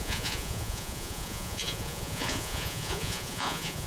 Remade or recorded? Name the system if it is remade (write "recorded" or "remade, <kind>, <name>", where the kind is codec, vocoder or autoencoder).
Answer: remade, vocoder, Vocos